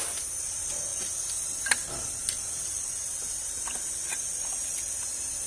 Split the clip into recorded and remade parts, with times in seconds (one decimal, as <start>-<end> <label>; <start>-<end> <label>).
0.0-5.5 recorded